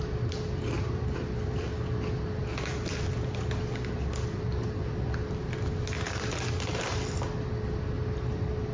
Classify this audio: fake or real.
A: real